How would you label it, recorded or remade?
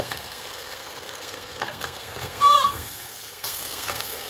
remade